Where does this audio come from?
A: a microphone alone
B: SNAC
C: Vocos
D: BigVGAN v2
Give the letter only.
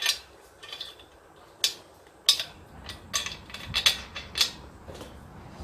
A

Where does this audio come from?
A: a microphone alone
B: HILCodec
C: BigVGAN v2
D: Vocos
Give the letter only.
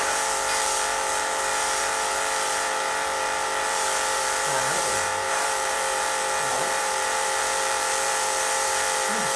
C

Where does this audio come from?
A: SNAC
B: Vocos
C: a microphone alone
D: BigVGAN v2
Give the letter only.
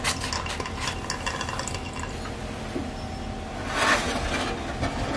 C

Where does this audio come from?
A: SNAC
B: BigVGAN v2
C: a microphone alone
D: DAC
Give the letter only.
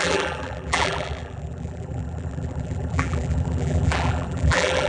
B